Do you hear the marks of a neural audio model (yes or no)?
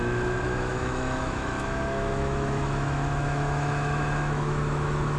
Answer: yes